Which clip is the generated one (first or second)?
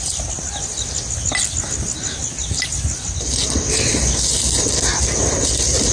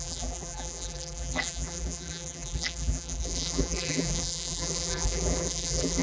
second